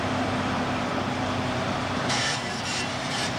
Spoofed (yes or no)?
yes